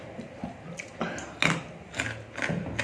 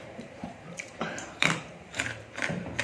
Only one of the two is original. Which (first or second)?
first